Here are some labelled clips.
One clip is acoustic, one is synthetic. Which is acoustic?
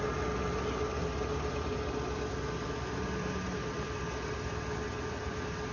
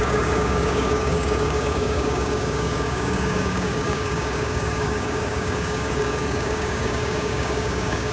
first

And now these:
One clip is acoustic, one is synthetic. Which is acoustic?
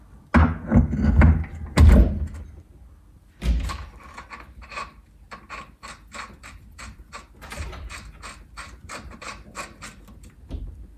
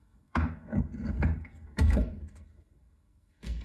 first